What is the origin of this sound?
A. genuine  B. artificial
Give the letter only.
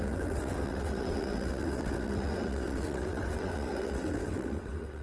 B